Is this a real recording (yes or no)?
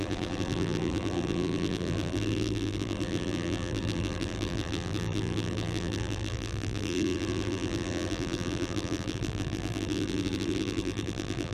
no